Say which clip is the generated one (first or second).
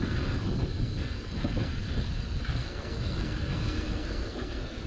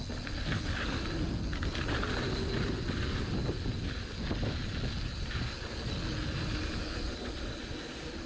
first